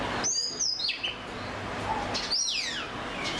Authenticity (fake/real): real